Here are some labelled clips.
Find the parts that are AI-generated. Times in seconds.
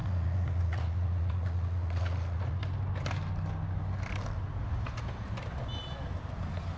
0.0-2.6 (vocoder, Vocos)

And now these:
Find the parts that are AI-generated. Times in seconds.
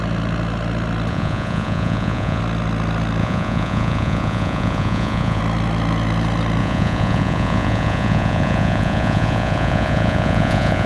1.1-2.4 (vocoder, Vocos); 3.2-5.4; 6.6-10.9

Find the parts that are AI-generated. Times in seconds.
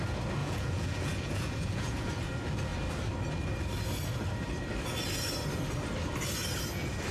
0.4-2.1 (vocoder, Vocos)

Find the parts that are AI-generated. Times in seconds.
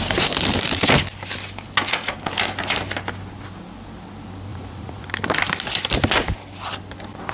4.5-5.1 (vocoder, Vocos)